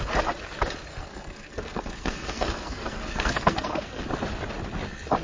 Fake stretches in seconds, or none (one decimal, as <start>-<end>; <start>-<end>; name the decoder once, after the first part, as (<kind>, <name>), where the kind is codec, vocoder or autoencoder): 0.9-4.0 (codec, SNAC)